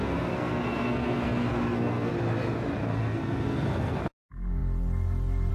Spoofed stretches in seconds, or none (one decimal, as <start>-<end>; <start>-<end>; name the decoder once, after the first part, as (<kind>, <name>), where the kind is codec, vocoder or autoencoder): 0.0-2.1 (codec, SNAC); 2.8-4.0